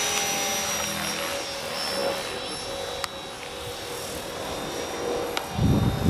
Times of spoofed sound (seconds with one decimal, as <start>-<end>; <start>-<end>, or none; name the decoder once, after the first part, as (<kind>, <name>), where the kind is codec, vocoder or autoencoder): none